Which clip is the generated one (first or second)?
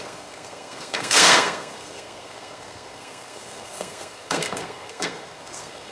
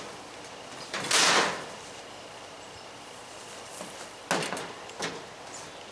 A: first